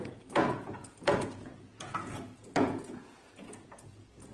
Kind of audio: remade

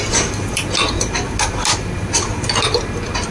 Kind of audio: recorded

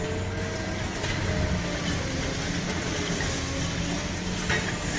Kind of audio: recorded